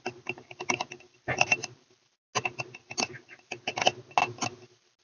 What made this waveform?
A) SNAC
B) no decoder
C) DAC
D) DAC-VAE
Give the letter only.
B